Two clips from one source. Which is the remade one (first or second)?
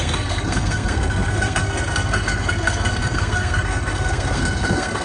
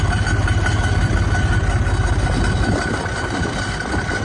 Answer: first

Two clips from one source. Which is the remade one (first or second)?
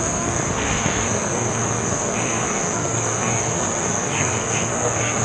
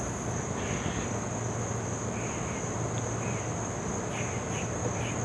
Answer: first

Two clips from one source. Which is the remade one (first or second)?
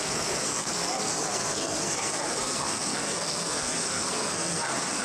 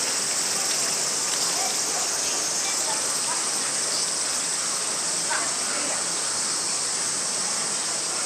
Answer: first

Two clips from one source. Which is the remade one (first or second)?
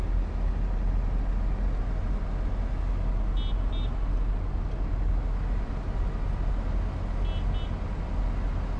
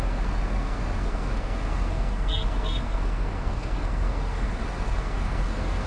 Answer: second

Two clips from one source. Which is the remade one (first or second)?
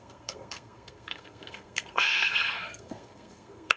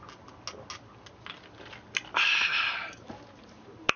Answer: first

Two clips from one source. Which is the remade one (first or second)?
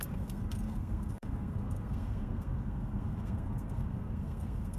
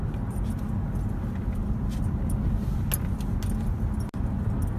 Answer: first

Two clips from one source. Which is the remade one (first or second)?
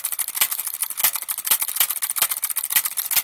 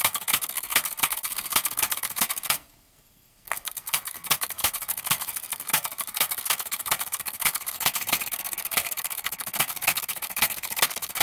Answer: second